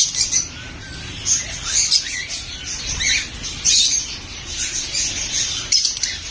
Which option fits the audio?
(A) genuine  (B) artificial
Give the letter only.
A